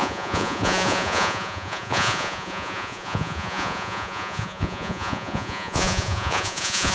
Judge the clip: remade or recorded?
remade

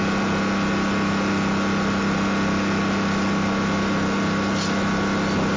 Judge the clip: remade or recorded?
recorded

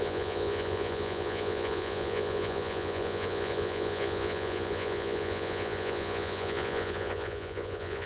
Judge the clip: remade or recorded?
remade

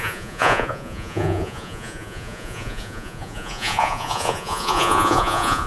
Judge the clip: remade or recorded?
remade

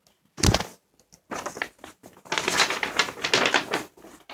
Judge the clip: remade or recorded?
recorded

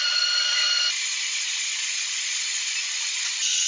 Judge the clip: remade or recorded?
remade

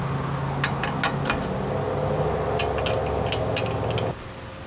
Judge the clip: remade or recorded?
recorded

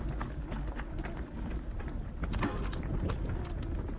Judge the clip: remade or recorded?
recorded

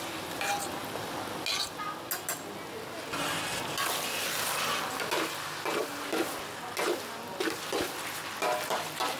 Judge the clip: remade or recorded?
recorded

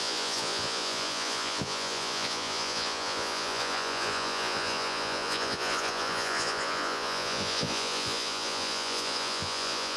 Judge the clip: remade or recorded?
remade